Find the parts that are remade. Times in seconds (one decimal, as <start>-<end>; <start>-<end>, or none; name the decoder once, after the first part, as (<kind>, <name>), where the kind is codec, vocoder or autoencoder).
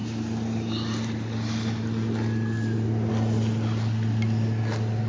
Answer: none